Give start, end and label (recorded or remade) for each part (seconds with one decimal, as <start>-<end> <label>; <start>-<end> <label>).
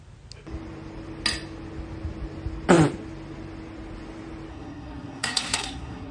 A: 0.0-4.5 recorded; 4.5-6.1 remade